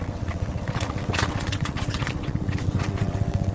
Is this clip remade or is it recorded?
remade